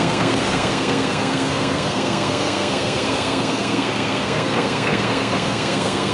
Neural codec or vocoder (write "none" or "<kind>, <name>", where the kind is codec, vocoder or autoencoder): codec, SNAC